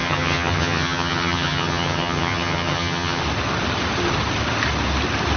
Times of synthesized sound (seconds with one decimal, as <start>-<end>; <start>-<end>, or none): 0.0-3.2